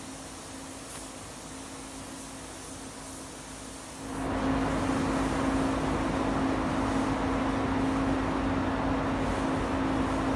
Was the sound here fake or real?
real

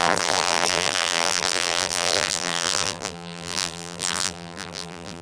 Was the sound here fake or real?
fake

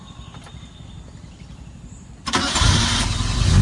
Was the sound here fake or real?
fake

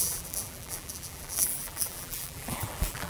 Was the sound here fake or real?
fake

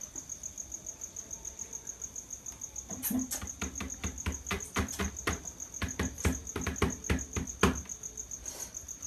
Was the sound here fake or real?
real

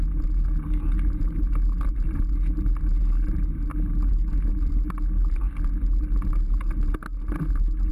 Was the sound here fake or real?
real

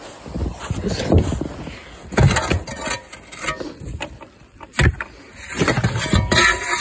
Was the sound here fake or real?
real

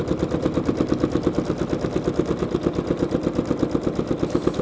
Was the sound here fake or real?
real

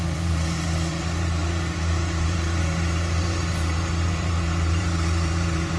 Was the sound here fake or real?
fake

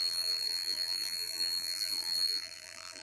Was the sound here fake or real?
fake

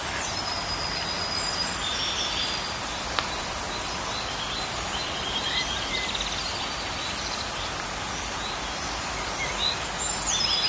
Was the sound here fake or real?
real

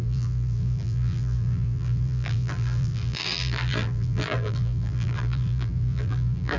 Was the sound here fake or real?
fake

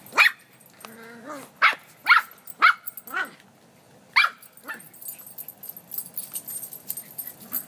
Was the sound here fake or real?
real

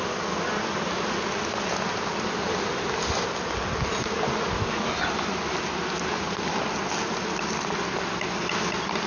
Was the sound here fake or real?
real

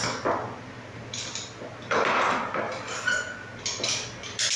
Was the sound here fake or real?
real